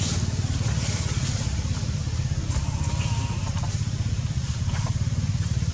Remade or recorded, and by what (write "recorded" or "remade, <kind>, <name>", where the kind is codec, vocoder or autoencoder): recorded